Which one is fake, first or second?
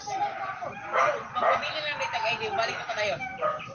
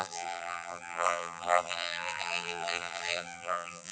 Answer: second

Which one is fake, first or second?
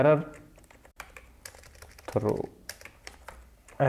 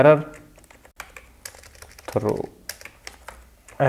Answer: first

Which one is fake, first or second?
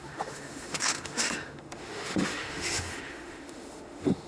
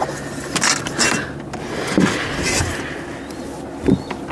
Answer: first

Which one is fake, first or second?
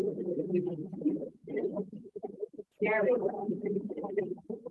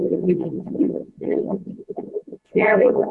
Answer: second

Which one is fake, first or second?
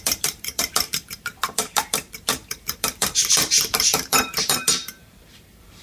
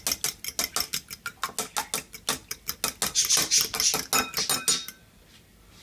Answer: first